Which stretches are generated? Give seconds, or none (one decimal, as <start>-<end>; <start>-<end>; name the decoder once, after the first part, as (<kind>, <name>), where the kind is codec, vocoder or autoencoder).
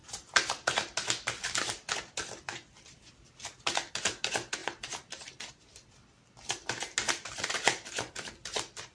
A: none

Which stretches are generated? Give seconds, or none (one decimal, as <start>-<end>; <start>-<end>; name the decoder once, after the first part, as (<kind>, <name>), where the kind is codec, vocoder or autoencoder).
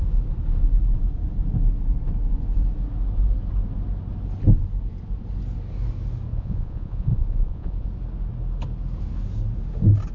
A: 6.3-7.9 (vocoder, Vocos)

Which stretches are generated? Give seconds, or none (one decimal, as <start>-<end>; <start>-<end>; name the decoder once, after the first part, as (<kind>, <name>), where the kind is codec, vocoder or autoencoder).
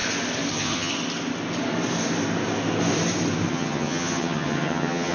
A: 0.5-0.9 (vocoder, HiFi-GAN); 3.5-5.1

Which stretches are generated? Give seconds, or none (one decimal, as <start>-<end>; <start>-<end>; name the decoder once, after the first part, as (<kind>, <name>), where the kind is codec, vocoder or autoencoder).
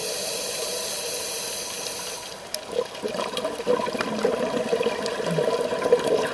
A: none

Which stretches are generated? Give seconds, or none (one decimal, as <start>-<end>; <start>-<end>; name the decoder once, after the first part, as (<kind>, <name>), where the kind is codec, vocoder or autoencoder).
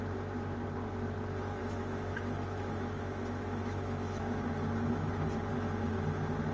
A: 1.6-5.5 (autoencoder, DAC-VAE)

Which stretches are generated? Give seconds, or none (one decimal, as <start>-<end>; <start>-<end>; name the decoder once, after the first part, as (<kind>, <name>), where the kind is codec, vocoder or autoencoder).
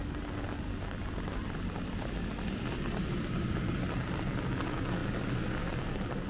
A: none